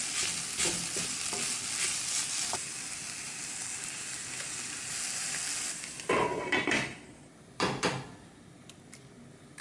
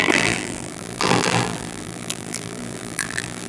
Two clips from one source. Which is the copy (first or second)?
second